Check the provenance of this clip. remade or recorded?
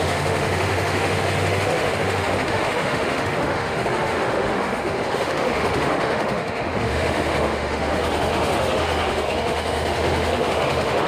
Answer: remade